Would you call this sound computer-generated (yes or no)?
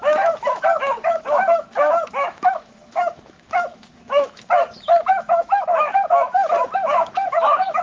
yes